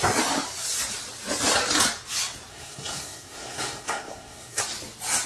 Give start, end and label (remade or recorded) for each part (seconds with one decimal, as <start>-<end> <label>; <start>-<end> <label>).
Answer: 0.0-2.5 recorded; 2.5-4.6 remade; 4.6-5.3 recorded